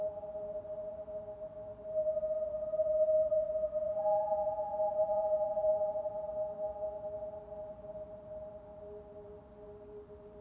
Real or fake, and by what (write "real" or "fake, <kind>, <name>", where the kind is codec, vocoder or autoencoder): real